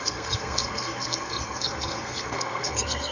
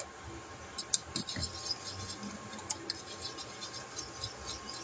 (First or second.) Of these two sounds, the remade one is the first